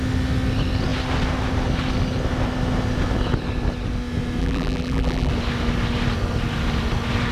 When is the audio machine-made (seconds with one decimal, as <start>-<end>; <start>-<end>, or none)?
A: 4.4-5.3